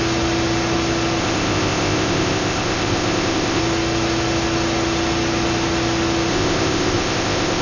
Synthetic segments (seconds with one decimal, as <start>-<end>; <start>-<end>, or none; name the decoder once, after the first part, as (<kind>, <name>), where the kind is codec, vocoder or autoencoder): 1.2-3.6 (codec, ZipCodec); 6.3-7.6